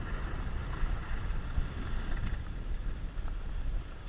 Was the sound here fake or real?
real